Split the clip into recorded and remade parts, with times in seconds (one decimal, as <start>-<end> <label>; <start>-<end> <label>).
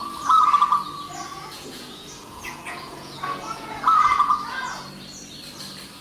0.0-1.3 recorded; 1.3-4.9 remade; 4.9-6.0 recorded